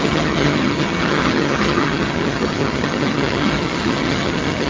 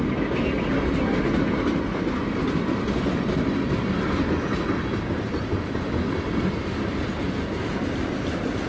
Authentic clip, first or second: second